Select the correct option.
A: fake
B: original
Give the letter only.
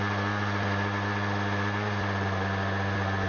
B